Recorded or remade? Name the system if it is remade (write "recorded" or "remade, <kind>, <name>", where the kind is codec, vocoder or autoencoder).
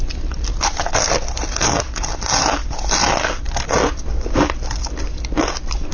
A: recorded